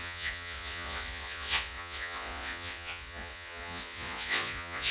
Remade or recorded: remade